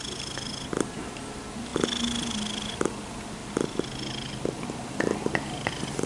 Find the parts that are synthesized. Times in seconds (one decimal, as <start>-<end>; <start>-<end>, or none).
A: 3.4-4.8